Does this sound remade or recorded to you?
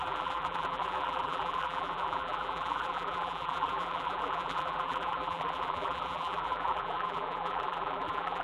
remade